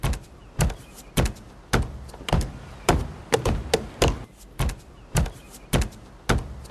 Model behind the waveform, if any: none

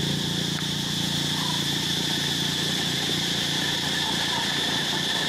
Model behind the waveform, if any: vocoder, BigVGAN v2